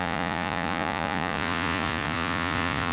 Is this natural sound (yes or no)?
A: no